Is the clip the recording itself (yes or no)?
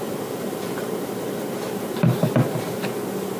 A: yes